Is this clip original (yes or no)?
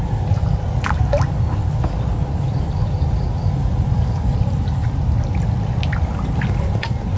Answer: yes